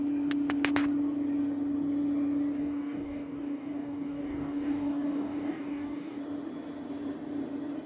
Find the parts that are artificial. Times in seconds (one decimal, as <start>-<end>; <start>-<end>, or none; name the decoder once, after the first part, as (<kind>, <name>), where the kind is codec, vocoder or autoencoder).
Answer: 2.6-6.2 (codec, DAC)